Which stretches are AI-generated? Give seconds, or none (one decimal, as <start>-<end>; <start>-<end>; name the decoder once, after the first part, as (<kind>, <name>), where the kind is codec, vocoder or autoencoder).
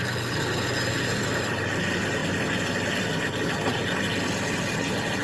none